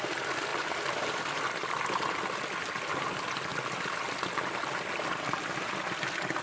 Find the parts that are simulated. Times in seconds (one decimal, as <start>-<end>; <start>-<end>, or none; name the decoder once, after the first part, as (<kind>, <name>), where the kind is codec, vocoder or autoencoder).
none